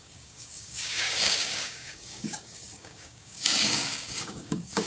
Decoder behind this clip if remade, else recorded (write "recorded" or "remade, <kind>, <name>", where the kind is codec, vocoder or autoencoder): remade, codec, DAC